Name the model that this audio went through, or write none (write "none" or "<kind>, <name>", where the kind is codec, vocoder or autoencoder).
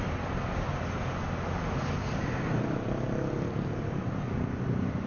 none